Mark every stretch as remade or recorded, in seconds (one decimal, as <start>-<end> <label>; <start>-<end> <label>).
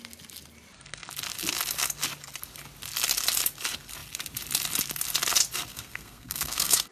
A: 0.0-5.7 recorded; 5.7-6.9 remade